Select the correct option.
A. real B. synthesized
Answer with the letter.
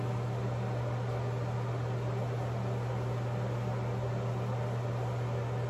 A